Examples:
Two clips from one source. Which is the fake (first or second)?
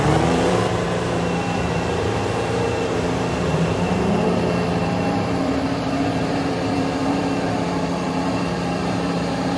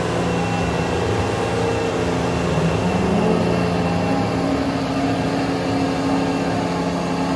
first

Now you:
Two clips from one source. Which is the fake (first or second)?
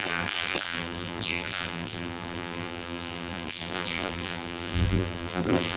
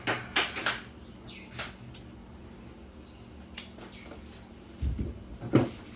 first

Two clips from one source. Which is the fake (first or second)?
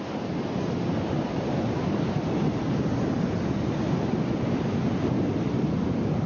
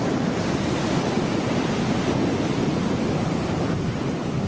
second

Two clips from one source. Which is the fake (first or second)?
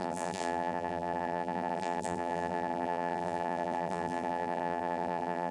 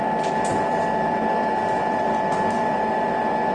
first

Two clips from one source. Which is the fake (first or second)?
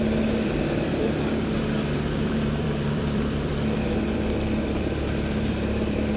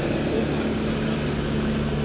first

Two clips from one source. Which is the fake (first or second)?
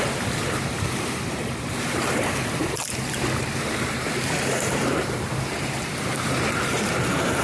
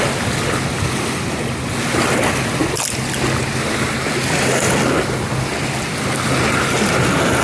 first